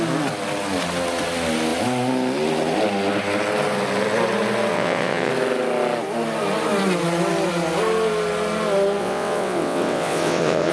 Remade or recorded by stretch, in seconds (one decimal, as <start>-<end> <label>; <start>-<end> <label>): 0.0-4.7 recorded; 4.7-5.3 remade; 5.3-9.0 recorded; 9.0-10.7 remade